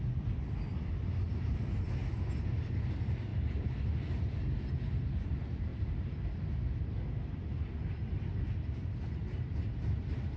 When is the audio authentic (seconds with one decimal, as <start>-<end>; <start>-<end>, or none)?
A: 0.0-10.4

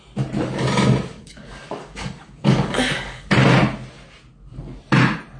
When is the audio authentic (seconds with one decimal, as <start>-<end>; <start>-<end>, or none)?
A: 0.0-1.1; 3.3-5.4

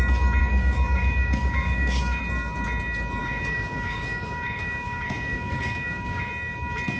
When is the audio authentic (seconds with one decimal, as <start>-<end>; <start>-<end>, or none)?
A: 0.0-0.4; 2.2-3.2; 6.3-7.0

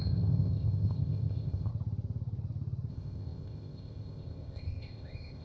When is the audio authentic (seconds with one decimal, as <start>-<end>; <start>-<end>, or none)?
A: 1.7-2.9

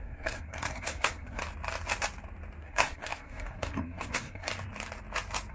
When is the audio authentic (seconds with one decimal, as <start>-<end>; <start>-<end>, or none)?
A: 1.4-2.6; 4.5-5.5

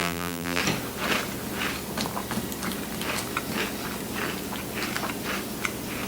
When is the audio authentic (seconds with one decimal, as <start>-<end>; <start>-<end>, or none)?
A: 0.6-6.1

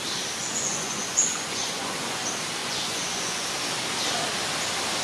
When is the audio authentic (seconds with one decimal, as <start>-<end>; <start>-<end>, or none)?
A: 0.0-0.4; 2.2-2.6; 3.5-5.0